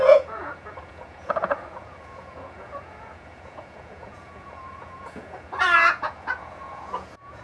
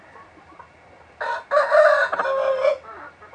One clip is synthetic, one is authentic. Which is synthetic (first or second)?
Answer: first